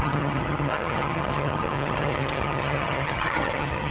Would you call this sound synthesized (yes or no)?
yes